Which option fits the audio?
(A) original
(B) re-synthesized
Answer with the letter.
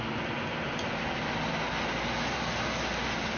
A